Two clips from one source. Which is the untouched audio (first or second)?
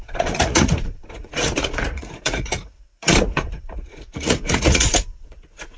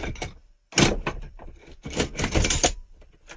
second